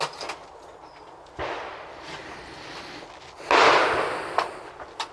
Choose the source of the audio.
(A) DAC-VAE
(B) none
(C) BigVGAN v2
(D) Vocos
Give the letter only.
B